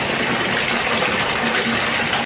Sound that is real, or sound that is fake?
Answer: real